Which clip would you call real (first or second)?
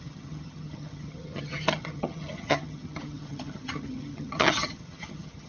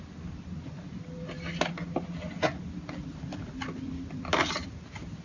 second